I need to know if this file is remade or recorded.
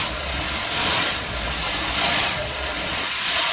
remade